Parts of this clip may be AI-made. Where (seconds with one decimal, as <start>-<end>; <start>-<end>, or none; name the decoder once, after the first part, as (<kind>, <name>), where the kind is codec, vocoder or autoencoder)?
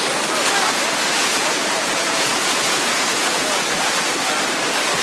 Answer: 1.2-3.7 (vocoder, Vocos)